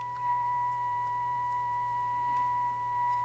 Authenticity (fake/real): fake